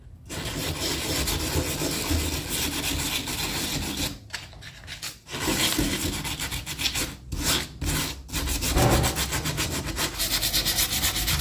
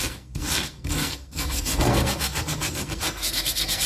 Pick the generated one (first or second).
second